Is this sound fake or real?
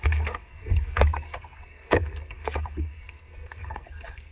fake